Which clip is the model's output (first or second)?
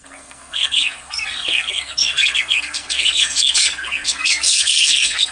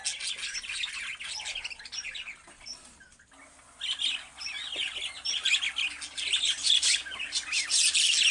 first